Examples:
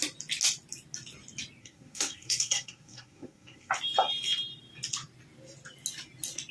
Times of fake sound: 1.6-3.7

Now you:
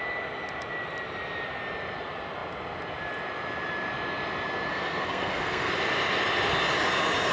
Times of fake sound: 4.7-5.7

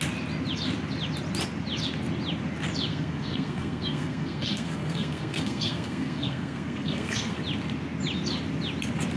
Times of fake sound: 2.9-7.4

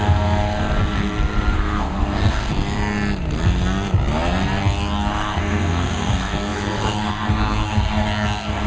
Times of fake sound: 0.0-2.5; 5.1-8.7